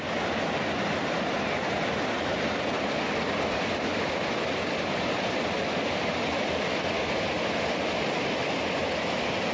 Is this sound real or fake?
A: fake